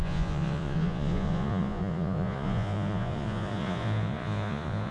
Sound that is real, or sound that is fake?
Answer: fake